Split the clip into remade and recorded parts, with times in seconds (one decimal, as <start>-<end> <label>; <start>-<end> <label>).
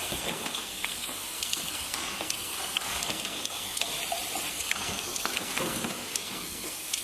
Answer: 0.0-3.9 remade; 3.9-4.5 recorded; 4.5-7.0 remade